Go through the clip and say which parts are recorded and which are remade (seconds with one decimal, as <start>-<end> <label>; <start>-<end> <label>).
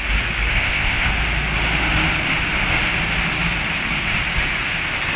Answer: 0.0-0.5 recorded; 0.5-1.1 remade; 1.1-5.2 recorded